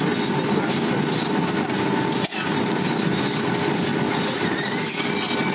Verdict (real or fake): real